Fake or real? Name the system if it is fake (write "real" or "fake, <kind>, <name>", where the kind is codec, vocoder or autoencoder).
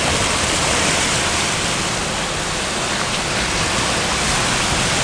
real